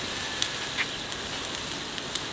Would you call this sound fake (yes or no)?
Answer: no